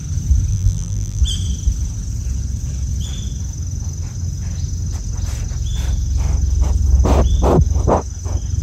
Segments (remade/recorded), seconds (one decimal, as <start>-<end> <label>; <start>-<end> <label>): 0.0-0.5 recorded; 0.5-1.2 remade; 1.2-8.6 recorded